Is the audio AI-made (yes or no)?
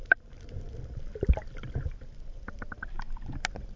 no